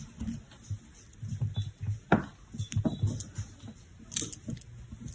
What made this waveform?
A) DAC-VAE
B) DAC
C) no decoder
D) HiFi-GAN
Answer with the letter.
C